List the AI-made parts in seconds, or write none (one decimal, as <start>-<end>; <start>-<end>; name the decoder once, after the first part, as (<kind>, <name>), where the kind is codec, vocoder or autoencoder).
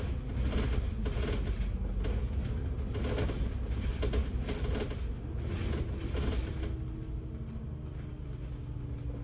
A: none